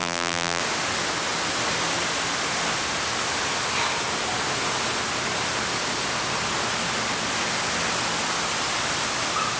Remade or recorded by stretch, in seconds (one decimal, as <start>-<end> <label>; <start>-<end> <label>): 0.0-0.6 remade; 0.6-9.6 recorded